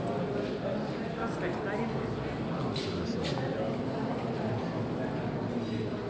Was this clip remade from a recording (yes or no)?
no